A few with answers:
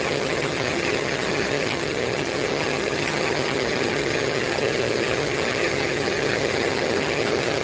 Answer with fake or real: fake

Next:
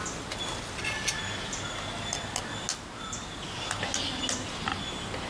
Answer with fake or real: real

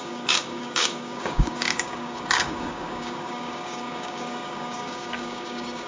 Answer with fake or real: fake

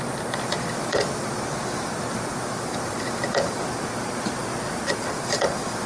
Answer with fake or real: fake